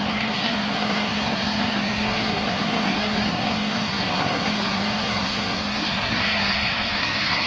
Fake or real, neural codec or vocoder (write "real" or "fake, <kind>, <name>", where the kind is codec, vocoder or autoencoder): fake, codec, SNAC